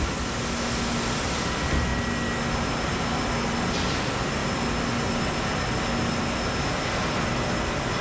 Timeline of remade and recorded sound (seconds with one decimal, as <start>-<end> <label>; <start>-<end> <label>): 0.0-8.0 recorded

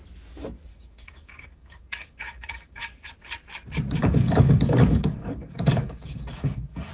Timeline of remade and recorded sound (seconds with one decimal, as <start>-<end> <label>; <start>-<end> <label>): 0.0-0.7 recorded; 0.7-3.1 remade; 3.1-4.0 recorded; 4.0-6.9 remade

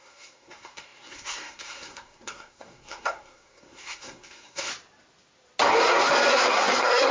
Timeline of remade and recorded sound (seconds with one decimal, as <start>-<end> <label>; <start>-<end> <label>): 0.0-4.7 remade; 4.7-6.3 recorded; 6.3-7.1 remade

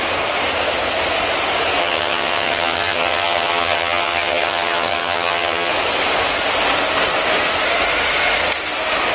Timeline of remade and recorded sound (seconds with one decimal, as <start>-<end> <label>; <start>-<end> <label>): 0.0-1.8 recorded; 1.8-5.7 remade; 5.7-9.1 recorded

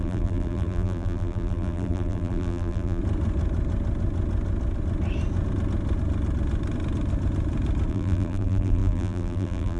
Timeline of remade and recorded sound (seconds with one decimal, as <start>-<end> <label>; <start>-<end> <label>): 0.0-3.0 remade; 3.0-7.9 recorded; 7.9-9.8 remade